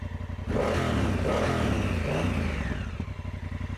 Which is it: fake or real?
real